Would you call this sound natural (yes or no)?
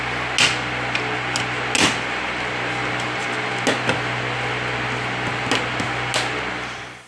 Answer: yes